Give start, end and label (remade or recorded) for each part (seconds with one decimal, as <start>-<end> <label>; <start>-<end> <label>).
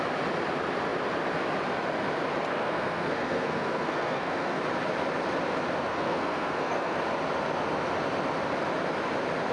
0.0-2.5 recorded; 2.5-4.6 remade; 4.6-5.9 recorded; 5.9-7.0 remade; 7.0-9.5 recorded